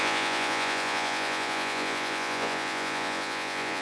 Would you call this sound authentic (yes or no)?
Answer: no